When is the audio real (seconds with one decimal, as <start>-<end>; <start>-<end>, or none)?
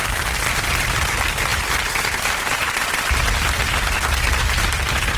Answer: 0.0-5.2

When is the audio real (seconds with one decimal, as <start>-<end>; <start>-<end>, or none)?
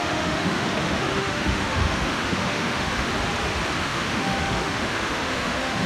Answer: 3.1-3.8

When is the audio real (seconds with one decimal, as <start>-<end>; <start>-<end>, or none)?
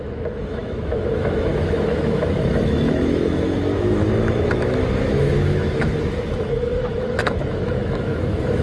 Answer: none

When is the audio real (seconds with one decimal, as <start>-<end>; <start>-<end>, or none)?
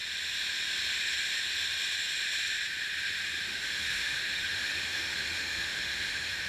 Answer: 0.0-3.5